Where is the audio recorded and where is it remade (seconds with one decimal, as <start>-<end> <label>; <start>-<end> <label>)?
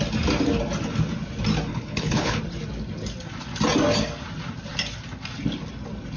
0.0-1.7 recorded; 1.7-2.4 remade; 2.4-6.2 recorded